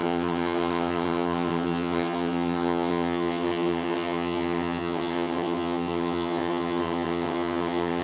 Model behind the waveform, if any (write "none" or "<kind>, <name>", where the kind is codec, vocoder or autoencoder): vocoder, HiFi-GAN